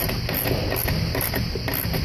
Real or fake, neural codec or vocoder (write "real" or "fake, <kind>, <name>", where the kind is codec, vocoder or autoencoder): real